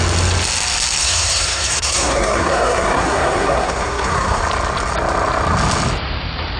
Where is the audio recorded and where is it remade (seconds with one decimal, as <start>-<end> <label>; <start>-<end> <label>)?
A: 0.0-1.0 recorded; 1.0-4.4 remade; 4.4-6.6 recorded

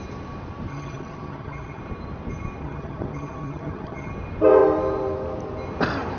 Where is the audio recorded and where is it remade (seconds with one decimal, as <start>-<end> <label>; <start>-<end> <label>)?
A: 0.0-0.7 recorded; 0.7-1.8 remade; 1.8-2.6 recorded; 2.6-4.1 remade; 4.1-6.2 recorded

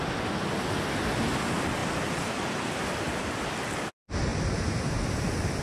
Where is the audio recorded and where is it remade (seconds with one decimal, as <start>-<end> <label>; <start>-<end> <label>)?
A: 0.0-1.8 recorded; 1.8-3.2 remade; 3.2-4.3 recorded; 4.3-5.6 remade

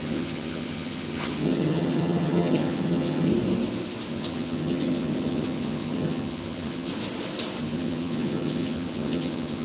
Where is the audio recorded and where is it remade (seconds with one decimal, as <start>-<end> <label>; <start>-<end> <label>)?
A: 0.0-3.3 remade; 3.3-4.1 recorded; 4.1-6.9 remade; 6.9-7.6 recorded; 7.6-9.6 remade